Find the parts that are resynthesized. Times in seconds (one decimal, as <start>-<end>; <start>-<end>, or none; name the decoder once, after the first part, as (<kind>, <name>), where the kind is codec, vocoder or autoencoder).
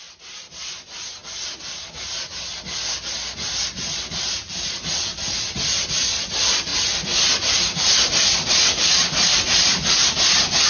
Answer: 0.0-1.2 (vocoder, BigVGAN v2); 4.2-10.7